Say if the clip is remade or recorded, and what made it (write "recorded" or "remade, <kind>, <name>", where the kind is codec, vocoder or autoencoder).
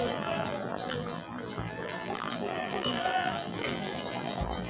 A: remade, vocoder, BigVGAN v2